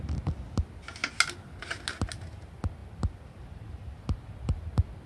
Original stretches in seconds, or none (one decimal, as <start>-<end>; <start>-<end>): 0.0-5.1